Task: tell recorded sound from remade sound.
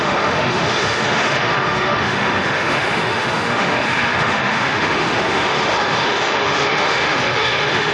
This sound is remade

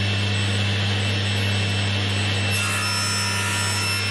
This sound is recorded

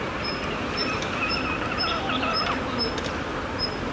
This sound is recorded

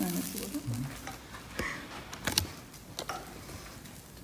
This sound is recorded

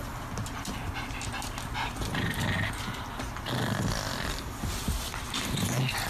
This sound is recorded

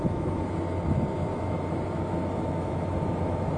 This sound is remade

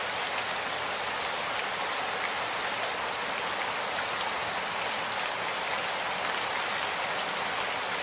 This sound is recorded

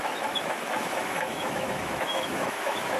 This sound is remade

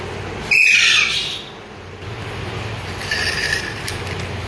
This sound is recorded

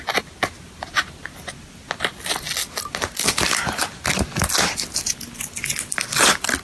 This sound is recorded